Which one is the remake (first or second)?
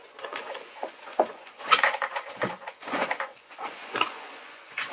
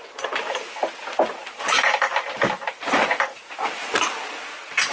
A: first